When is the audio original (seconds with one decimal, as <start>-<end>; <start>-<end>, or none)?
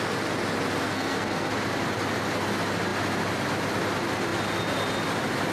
0.0-0.8; 1.5-5.5